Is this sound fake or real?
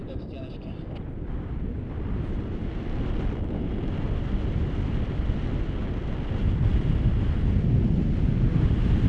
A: real